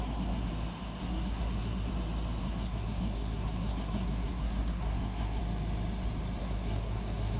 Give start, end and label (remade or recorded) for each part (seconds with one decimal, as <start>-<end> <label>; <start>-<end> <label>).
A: 0.0-0.5 remade; 0.5-1.0 recorded; 1.0-1.9 remade; 1.9-2.4 recorded; 2.4-5.4 remade; 5.4-6.4 recorded; 6.4-7.4 remade